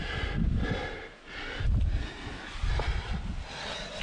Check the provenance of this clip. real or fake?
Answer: real